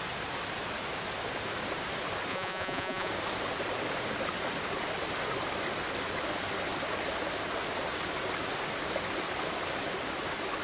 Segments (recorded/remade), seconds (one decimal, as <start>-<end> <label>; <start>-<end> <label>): 0.0-2.3 recorded; 2.3-3.1 remade; 3.1-10.6 recorded